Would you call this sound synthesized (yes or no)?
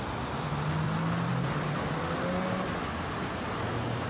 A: no